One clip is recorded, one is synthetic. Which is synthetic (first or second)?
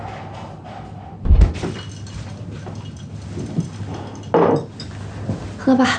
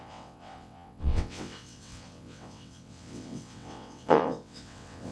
second